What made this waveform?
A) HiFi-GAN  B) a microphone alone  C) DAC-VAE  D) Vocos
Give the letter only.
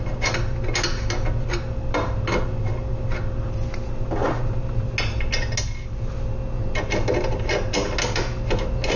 B